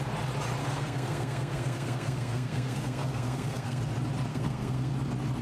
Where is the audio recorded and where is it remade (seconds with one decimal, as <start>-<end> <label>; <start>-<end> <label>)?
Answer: 0.0-0.6 recorded; 0.6-3.8 remade; 3.8-4.3 recorded; 4.3-4.9 remade; 4.9-5.4 recorded